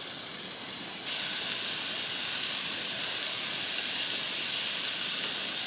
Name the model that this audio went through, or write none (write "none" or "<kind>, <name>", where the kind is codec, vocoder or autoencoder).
none